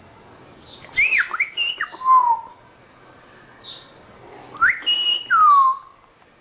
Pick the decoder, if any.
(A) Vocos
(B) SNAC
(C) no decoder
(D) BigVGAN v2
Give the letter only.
C